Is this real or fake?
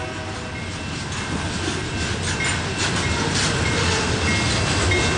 real